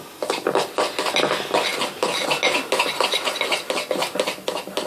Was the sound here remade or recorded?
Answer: recorded